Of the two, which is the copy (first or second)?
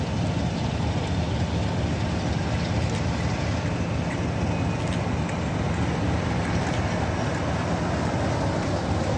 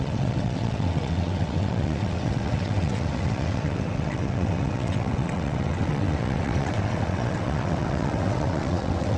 second